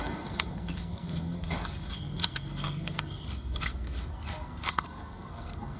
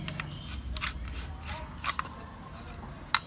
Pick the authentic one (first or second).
second